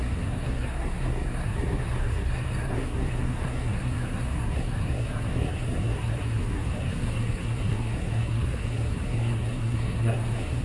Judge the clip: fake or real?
fake